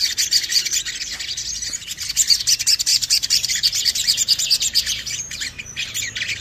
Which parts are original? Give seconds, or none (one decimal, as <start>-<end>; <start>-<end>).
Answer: 0.0-2.9; 5.6-6.4